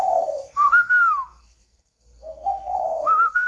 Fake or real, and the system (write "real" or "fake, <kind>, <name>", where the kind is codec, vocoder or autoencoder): fake, codec, SNAC